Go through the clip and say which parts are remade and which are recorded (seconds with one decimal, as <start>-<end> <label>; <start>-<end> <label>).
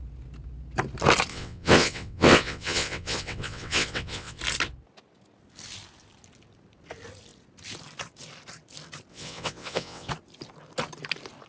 0.0-1.3 recorded; 1.3-4.4 remade; 4.4-9.1 recorded; 9.1-10.1 remade; 10.1-11.5 recorded